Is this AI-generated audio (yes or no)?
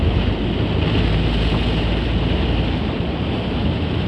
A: no